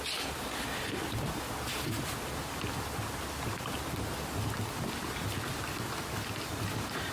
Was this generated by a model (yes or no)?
yes